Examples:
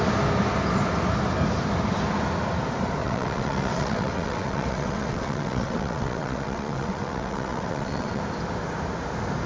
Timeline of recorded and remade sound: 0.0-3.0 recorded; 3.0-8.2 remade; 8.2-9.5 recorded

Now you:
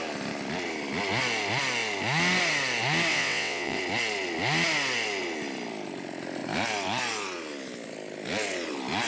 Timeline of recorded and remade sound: 0.0-3.1 recorded; 3.1-3.8 remade; 3.8-9.1 recorded

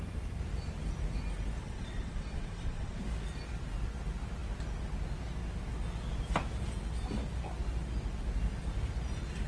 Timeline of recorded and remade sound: 0.0-1.6 recorded; 1.6-3.0 remade; 3.0-9.5 recorded

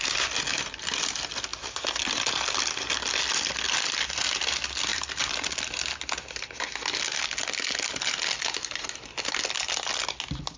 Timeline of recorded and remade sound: 0.0-10.6 recorded

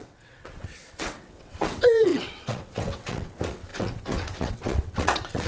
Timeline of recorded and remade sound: 0.0-5.5 remade

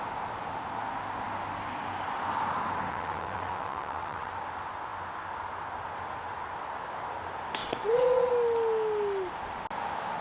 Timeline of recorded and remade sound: 0.0-2.9 recorded; 2.9-4.3 remade; 4.3-7.6 recorded; 7.6-8.3 remade; 8.3-10.2 recorded

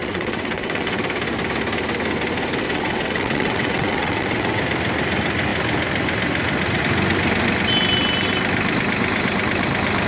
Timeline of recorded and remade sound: 0.0-1.0 remade; 1.0-2.6 recorded; 2.6-4.6 remade; 4.6-10.1 recorded

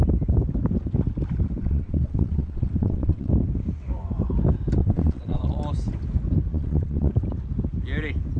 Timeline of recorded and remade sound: 0.0-1.6 recorded; 1.6-3.3 remade; 3.3-4.8 recorded; 4.8-5.6 remade; 5.6-6.5 recorded; 6.5-7.1 remade; 7.1-8.4 recorded